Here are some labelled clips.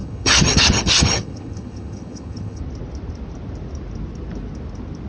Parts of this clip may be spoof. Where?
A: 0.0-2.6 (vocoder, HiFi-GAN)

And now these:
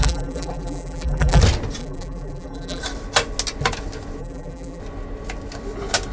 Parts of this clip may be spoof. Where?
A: 0.0-1.4 (vocoder, BigVGAN v2); 1.8-2.8; 4.2-4.8

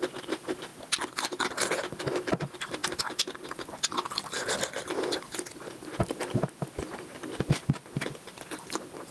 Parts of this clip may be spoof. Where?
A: 0.0-0.7 (vocoder, BigVGAN v2); 2.3-2.8; 4.8-9.1

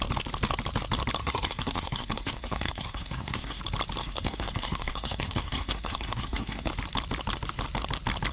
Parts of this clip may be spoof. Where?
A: 1.2-3.6 (codec, SNAC); 4.0-6.7

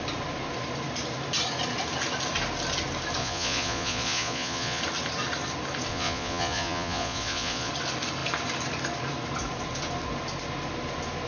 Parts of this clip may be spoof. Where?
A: 3.2-4.8 (vocoder, Vocos); 5.9-7.7

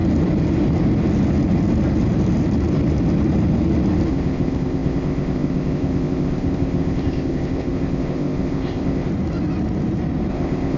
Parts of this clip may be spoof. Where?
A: 4.1-9.1 (codec, ZipCodec); 10.3-10.8